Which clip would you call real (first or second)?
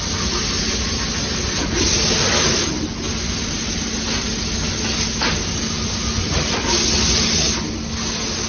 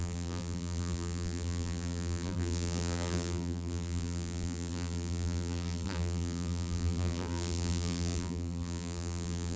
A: first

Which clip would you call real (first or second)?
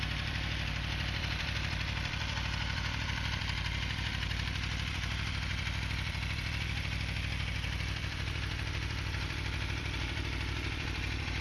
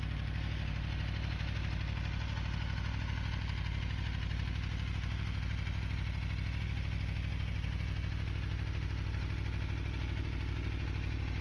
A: second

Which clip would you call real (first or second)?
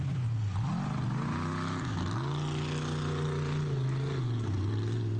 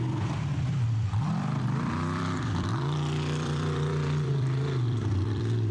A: first